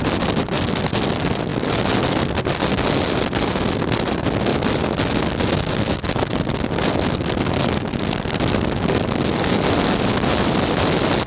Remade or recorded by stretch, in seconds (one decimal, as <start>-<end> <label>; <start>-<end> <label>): 0.0-4.5 recorded; 4.5-5.2 remade; 5.2-11.3 recorded